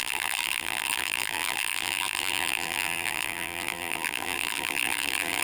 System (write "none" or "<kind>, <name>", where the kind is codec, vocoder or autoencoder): vocoder, BigVGAN v2